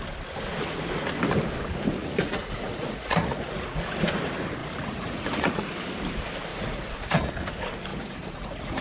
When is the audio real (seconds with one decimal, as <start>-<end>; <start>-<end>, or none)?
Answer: 0.0-2.0; 4.0-4.6; 5.7-6.5; 7.3-7.9

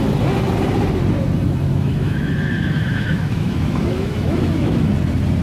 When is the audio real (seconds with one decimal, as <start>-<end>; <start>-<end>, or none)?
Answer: 0.0-1.7; 4.9-5.4

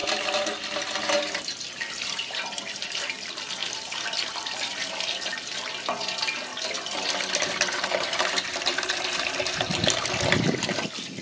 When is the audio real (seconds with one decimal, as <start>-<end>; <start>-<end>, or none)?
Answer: 2.1-3.6; 5.4-6.5; 7.9-11.2

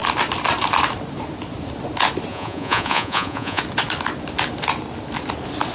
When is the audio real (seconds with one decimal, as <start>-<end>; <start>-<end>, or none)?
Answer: 0.0-2.3; 3.6-5.7

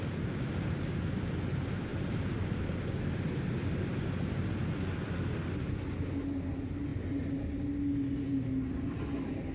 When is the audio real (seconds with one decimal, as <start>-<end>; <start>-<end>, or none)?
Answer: 0.0-9.5

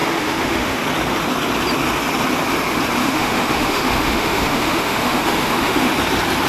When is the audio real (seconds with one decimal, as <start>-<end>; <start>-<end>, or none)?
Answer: 0.8-3.0; 5.9-6.5

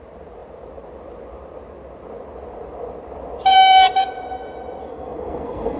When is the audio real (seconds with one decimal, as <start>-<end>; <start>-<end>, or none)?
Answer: 0.0-4.8